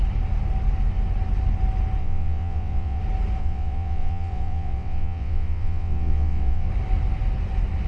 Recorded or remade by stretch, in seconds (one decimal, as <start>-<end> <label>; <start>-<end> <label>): 0.0-2.0 recorded; 2.0-3.0 remade; 3.0-3.4 recorded; 3.4-6.7 remade; 6.7-7.9 recorded